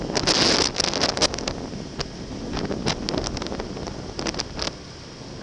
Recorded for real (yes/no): yes